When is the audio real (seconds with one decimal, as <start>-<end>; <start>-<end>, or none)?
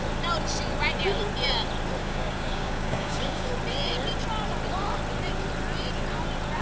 0.0-2.0; 3.5-6.6